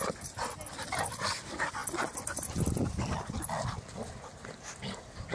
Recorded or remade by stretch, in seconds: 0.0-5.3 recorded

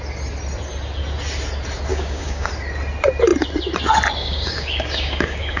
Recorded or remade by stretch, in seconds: 0.0-1.9 recorded; 1.9-2.5 remade; 2.5-4.2 recorded; 4.2-5.6 remade

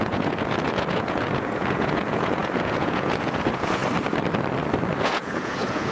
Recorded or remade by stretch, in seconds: 0.0-3.8 remade; 3.8-5.0 recorded; 5.0-5.9 remade